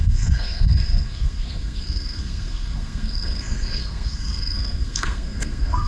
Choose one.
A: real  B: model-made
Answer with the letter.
B